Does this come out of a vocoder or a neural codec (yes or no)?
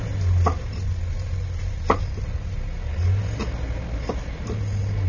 no